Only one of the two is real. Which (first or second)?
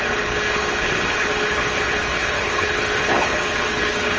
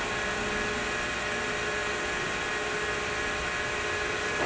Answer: second